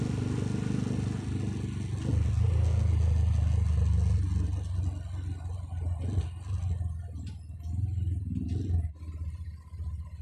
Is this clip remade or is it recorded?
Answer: recorded